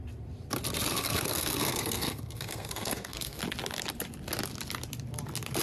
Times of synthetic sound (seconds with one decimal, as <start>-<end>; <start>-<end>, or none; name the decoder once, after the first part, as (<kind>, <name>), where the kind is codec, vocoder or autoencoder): 0.9-3.4 (codec, SNAC)